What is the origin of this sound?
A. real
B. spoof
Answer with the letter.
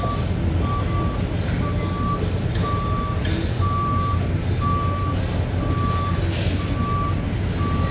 A